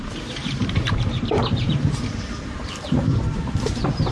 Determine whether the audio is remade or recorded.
remade